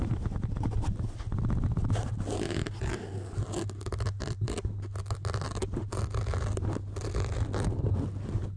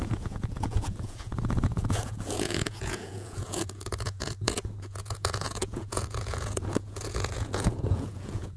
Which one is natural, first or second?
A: first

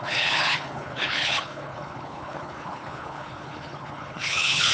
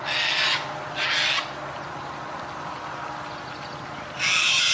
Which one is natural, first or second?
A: second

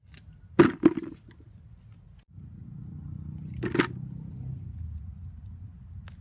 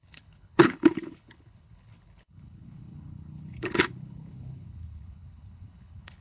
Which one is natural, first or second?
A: first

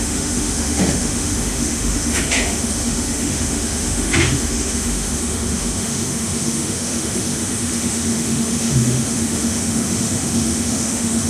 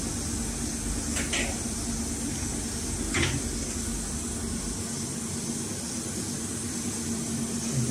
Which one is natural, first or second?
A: second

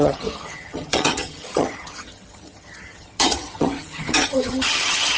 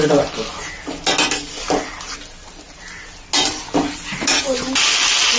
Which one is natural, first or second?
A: second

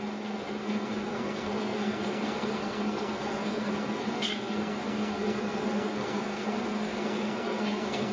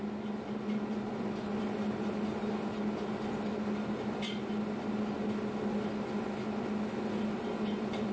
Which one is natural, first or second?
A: second